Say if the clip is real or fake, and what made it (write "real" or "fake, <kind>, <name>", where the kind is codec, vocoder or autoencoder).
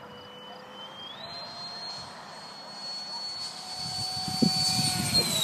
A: real